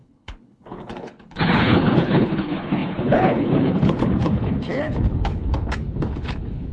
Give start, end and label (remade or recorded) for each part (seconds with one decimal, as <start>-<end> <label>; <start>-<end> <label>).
0.0-6.7 remade